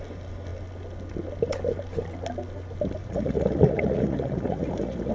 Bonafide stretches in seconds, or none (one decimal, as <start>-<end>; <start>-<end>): 0.0-3.0